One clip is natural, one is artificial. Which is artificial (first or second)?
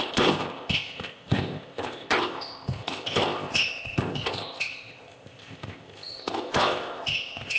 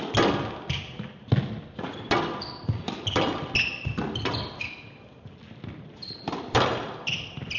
first